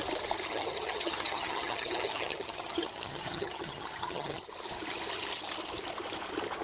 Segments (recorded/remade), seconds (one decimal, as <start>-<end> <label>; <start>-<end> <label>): 0.0-0.5 recorded; 0.5-4.5 remade; 4.5-6.6 recorded